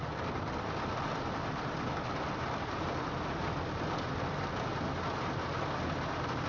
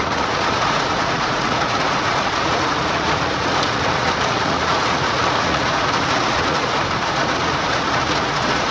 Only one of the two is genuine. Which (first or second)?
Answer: first